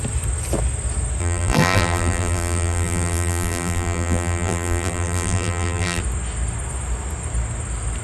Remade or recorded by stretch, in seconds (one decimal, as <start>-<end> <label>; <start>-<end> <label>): 0.0-1.2 recorded; 1.2-6.0 remade; 6.0-8.0 recorded